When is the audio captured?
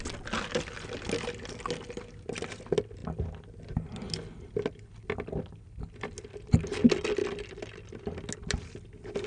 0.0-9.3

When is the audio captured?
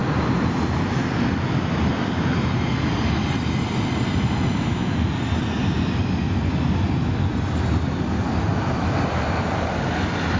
0.0-10.4